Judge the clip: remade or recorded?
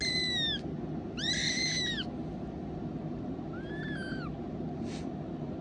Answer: recorded